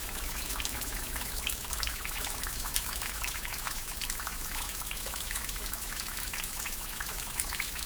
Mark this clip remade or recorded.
remade